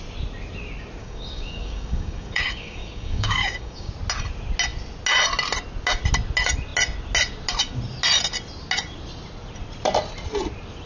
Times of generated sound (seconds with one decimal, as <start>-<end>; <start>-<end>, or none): 1.0-3.9